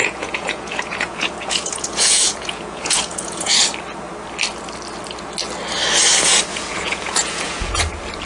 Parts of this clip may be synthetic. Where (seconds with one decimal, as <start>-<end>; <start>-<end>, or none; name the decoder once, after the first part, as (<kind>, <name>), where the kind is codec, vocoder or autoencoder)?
0.0-3.5 (vocoder, Vocos); 6.5-7.8